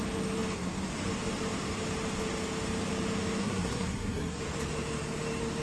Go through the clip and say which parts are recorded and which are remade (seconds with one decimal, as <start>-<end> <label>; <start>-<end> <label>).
0.0-3.4 recorded; 3.4-4.4 remade; 4.4-5.6 recorded